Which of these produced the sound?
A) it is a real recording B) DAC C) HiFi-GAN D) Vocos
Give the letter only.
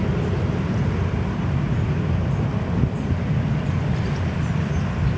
A